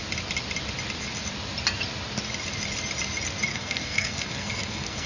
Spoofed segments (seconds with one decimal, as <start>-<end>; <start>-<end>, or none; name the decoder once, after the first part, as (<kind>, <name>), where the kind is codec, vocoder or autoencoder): 3.5-5.1 (codec, SNAC)